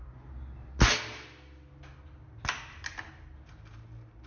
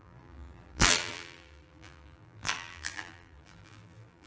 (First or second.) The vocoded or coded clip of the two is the second